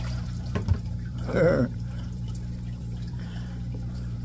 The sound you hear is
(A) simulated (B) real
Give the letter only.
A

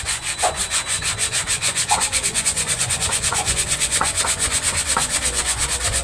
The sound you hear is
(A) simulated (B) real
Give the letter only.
A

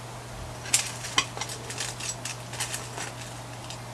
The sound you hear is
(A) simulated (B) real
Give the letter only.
B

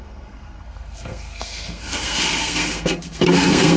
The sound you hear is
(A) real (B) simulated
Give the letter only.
B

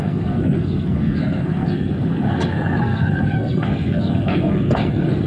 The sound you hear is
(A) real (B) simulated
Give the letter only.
B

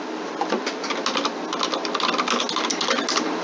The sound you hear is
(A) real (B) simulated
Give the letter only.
A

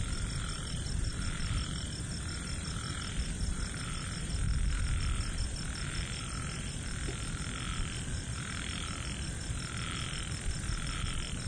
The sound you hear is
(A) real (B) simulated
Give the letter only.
B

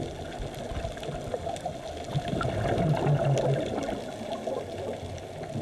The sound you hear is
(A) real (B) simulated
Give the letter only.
A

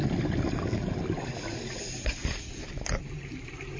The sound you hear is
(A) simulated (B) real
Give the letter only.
B